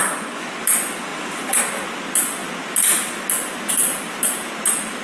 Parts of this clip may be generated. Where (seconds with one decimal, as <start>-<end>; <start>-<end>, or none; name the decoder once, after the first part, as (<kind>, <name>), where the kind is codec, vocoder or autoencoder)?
0.0-0.6 (vocoder, Vocos)